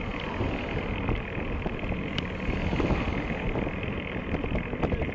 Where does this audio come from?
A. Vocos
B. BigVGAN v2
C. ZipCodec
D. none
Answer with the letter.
D